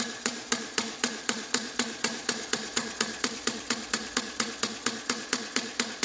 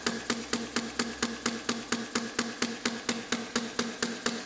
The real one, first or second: second